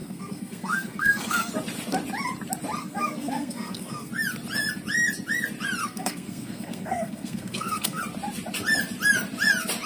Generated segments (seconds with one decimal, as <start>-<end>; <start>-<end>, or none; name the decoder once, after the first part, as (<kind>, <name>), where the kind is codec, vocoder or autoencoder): 0.0-1.5 (codec, SNAC); 2.8-4.1; 5.8-8.0